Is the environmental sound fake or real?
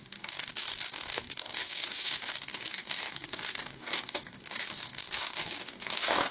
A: fake